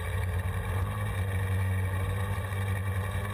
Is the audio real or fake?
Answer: real